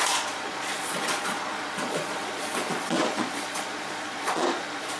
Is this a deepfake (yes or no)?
yes